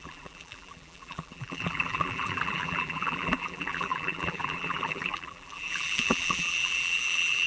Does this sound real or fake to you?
fake